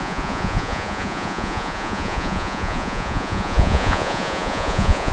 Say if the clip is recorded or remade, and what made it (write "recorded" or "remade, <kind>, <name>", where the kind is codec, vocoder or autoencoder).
remade, vocoder, Vocos